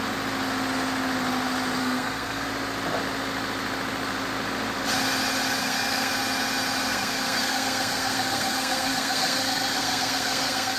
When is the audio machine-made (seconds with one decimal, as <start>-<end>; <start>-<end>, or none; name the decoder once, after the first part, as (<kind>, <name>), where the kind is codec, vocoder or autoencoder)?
1.8-2.5 (codec, SNAC); 5.6-6.1; 6.9-10.8